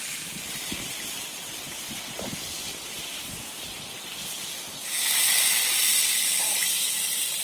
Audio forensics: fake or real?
fake